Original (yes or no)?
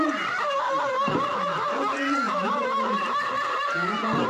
yes